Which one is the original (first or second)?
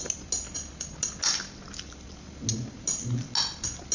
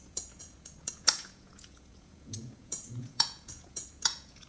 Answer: first